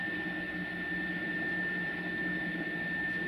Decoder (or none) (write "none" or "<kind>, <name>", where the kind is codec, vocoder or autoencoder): none